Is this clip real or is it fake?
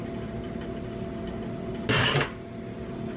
real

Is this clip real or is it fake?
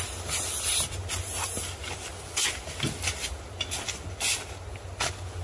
real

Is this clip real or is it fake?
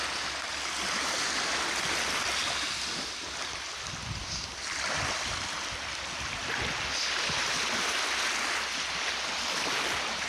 real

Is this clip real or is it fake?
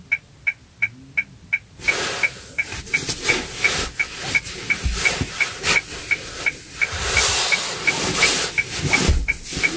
real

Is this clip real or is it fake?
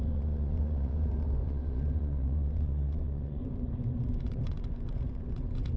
fake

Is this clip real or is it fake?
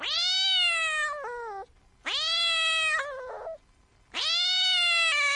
real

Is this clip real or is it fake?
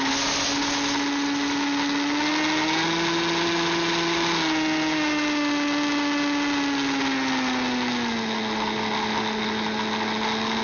real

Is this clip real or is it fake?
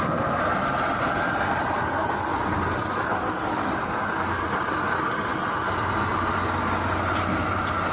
real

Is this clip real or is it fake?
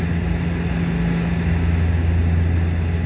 real